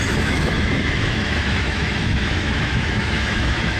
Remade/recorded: remade